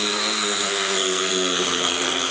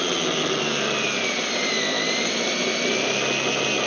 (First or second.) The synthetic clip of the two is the first